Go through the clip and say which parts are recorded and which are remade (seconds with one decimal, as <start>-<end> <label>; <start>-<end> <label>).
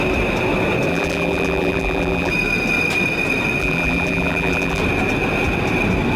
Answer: 0.0-0.9 recorded; 0.9-2.3 remade; 2.3-3.6 recorded; 3.6-4.8 remade; 4.8-6.2 recorded